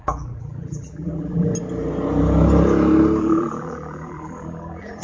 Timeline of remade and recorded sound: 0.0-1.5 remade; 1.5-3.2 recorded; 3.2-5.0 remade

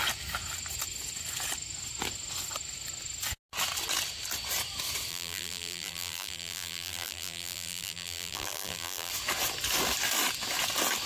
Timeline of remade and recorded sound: 0.0-5.1 recorded; 5.1-9.1 remade; 9.1-11.1 recorded

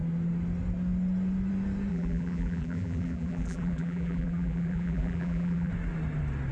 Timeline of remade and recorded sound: 0.0-1.9 recorded; 1.9-5.7 remade; 5.7-6.5 recorded